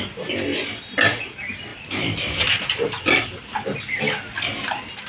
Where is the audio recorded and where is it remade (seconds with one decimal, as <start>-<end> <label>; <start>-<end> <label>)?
0.0-1.7 recorded; 1.7-5.1 remade